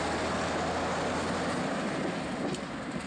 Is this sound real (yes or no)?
yes